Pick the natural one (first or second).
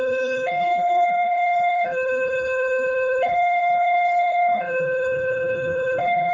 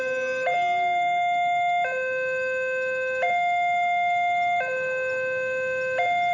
second